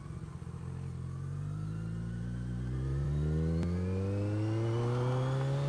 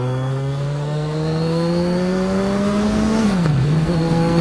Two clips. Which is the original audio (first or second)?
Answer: first